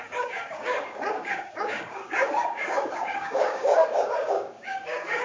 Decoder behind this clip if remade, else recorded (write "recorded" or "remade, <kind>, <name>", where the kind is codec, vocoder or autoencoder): remade, codec, DAC